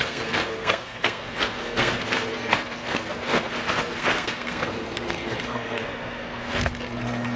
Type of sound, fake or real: fake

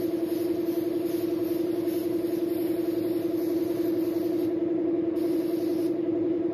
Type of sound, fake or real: real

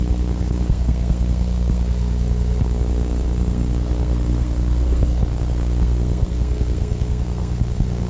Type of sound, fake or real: fake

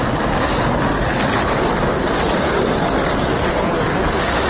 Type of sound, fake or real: real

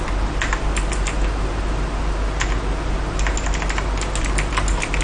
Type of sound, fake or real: real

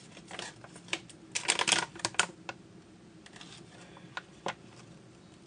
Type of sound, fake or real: real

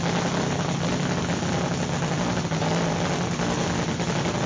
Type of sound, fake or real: real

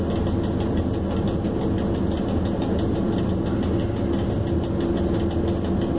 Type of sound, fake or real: real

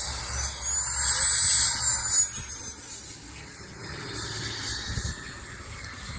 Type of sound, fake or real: real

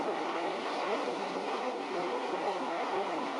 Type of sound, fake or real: fake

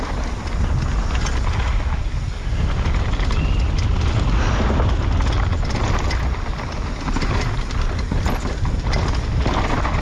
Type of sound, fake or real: real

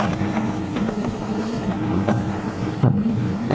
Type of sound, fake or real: fake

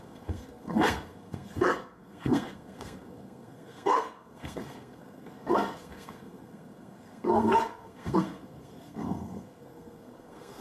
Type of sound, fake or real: fake